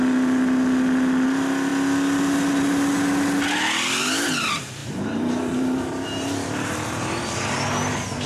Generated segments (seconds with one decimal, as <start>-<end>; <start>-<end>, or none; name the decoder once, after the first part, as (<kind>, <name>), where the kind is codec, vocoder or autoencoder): 4.8-7.8 (vocoder, BigVGAN v2)